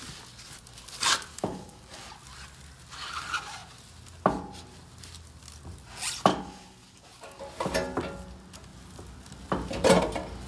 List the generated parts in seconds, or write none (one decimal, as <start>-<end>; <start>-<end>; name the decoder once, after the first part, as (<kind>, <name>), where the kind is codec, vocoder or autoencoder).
1.3-2.1 (codec, DAC); 6.3-7.4